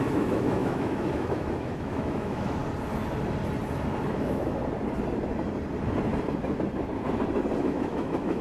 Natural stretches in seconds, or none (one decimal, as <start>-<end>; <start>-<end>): 2.6-4.1; 4.6-7.6